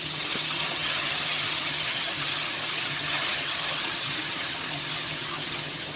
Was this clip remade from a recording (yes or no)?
yes